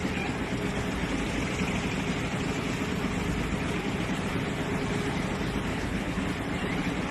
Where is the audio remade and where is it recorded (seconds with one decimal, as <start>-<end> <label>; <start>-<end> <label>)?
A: 0.0-5.7 recorded; 5.7-6.2 remade; 6.2-7.1 recorded